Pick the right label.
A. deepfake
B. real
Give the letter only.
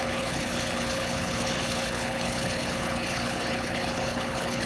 A